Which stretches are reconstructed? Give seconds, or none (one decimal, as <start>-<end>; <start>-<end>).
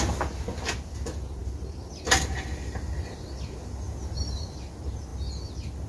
none